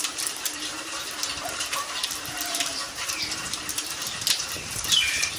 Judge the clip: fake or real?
fake